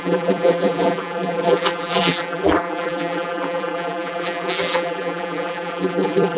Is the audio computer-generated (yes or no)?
yes